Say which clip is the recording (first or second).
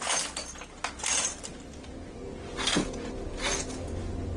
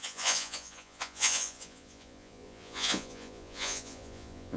first